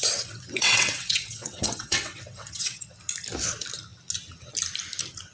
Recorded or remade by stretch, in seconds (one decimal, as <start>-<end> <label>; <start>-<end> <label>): 0.0-2.9 remade; 2.9-5.3 recorded